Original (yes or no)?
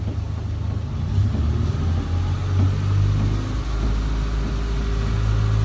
yes